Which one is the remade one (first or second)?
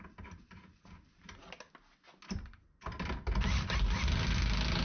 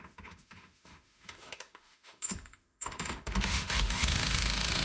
second